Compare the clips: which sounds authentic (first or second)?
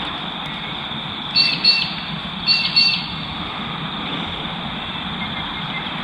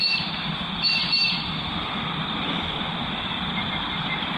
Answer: first